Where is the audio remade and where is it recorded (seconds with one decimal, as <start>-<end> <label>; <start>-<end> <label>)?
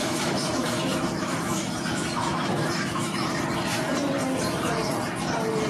0.0-3.4 remade; 3.4-5.7 recorded